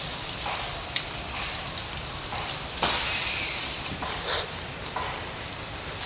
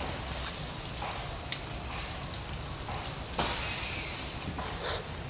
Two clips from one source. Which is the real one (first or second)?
second